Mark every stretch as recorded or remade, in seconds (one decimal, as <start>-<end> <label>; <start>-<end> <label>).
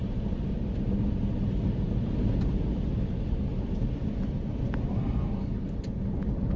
0.0-6.6 recorded